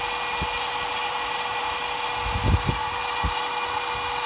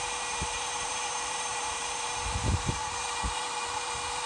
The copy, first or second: second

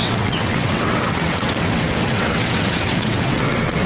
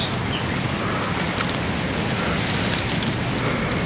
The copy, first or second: first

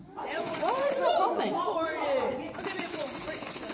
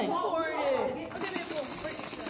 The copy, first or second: first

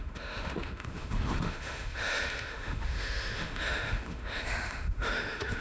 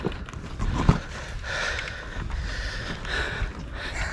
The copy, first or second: first